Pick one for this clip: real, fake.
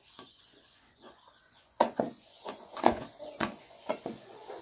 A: fake